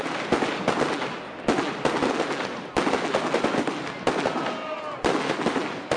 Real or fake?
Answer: real